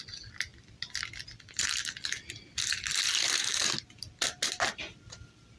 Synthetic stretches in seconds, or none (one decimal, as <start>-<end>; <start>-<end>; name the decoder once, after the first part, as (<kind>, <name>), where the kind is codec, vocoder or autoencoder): none